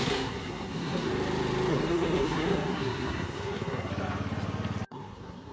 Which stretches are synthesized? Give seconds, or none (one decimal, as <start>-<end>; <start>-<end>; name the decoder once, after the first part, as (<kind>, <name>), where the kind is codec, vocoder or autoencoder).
0.0-1.1 (codec, SNAC); 1.7-3.9; 4.9-5.5

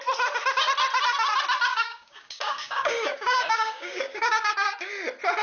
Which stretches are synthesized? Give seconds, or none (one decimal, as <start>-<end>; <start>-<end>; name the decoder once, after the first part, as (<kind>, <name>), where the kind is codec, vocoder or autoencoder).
1.7-4.9 (codec, DAC)

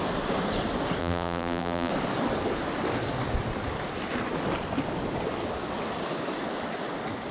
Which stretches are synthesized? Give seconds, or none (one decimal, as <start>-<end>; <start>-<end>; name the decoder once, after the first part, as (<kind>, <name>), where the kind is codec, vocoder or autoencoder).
1.0-1.9 (vocoder, BigVGAN v2)

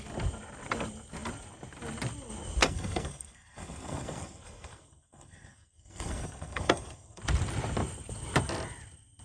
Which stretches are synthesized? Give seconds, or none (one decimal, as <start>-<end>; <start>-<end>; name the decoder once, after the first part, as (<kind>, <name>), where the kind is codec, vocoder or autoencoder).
2.6-7.2 (codec, SNAC)

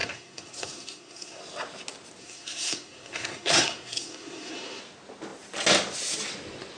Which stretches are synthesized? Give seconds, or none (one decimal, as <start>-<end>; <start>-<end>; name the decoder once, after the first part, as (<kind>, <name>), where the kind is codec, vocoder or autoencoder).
0.0-1.4 (codec, SNAC); 2.2-4.8

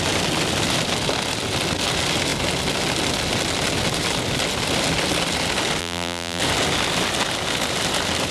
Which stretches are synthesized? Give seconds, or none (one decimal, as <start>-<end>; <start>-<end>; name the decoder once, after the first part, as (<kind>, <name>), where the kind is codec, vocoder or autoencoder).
5.8-6.4 (vocoder, BigVGAN v2)